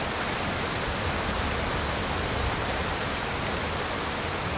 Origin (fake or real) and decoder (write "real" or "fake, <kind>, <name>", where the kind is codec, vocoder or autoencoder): real